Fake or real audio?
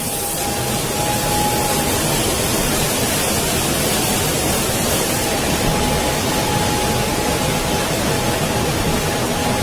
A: real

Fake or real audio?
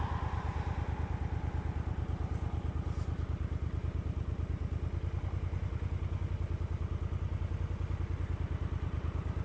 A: real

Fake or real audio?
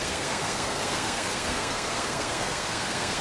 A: fake